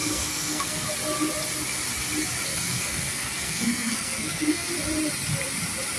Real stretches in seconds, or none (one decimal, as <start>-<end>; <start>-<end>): 0.9-2.5; 4.7-6.0